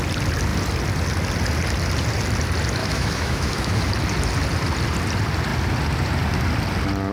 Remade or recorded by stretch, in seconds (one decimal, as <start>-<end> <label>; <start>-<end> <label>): 0.0-2.8 recorded; 2.8-3.9 remade; 3.9-7.1 recorded